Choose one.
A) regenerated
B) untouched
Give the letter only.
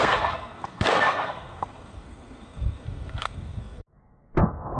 A